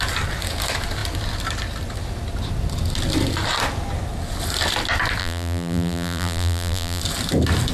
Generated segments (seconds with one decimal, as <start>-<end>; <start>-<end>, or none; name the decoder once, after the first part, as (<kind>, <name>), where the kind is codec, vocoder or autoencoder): 5.2-7.0 (vocoder, BigVGAN v2)